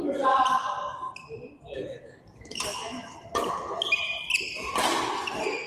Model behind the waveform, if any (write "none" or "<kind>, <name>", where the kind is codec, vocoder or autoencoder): none